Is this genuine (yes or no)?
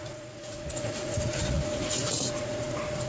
no